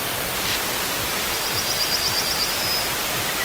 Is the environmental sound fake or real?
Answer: real